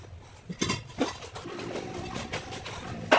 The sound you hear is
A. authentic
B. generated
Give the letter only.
A